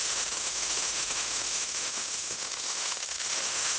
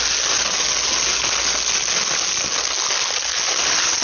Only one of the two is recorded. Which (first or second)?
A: second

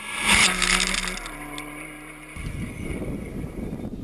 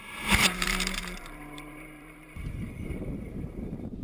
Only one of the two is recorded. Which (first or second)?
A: first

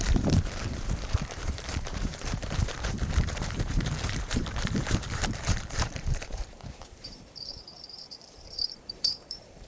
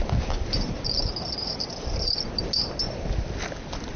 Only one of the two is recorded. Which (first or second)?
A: second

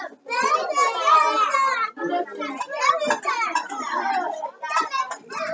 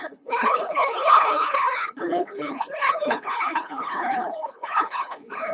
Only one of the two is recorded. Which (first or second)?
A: first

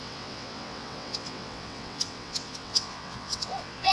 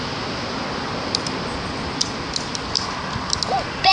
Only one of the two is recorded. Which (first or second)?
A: second